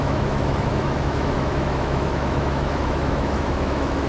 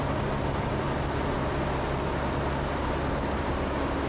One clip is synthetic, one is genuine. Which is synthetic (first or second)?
first